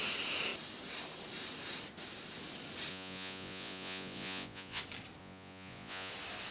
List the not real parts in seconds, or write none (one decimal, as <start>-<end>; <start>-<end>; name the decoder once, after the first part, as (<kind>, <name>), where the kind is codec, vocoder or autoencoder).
2.9-4.8 (vocoder, Vocos); 5.2-6.1